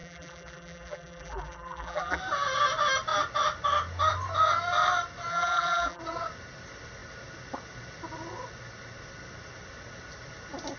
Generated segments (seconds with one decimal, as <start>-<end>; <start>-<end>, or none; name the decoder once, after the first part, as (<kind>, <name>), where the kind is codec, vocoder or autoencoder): 0.0-2.2 (vocoder, BigVGAN v2); 5.3-6.0